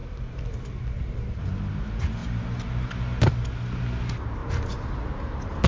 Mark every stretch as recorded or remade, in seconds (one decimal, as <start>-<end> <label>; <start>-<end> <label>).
0.0-5.7 recorded